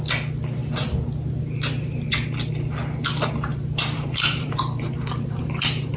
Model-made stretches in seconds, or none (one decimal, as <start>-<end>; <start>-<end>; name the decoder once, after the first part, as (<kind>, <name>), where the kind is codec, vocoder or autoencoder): 3.5-6.0 (vocoder, BigVGAN v2)